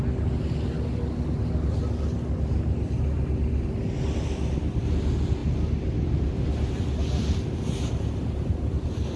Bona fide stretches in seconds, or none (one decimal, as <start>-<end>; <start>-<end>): 0.0-9.2